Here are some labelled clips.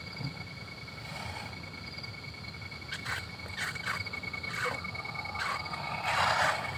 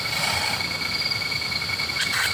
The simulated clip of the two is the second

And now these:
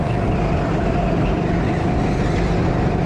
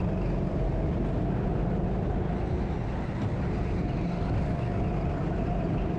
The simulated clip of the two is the first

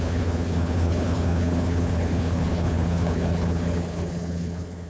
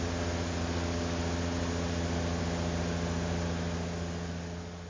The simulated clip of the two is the first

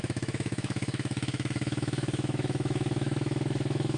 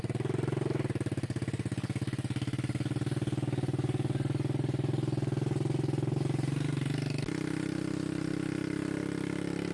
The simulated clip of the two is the first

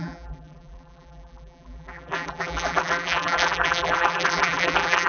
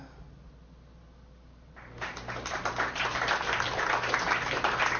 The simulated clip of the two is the first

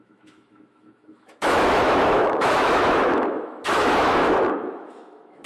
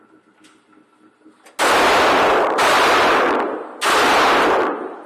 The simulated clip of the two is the first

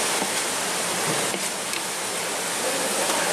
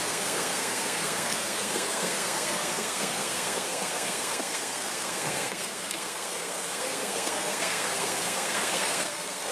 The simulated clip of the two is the second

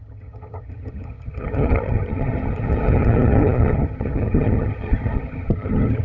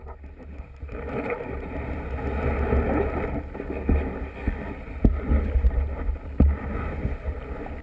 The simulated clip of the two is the first